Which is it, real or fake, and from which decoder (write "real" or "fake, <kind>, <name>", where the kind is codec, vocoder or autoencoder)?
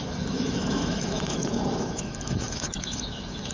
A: fake, autoencoder, DAC-VAE